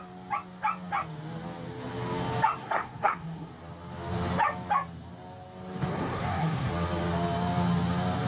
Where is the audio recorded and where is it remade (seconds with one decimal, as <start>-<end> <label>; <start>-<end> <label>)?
0.0-2.6 recorded; 2.6-3.5 remade; 3.5-5.9 recorded; 5.9-6.7 remade; 6.7-8.3 recorded